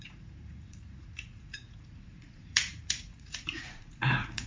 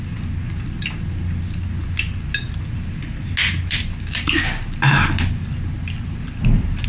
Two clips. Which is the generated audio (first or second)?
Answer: first